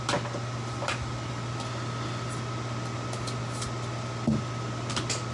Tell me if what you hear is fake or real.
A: real